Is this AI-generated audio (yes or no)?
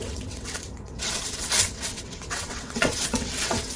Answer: yes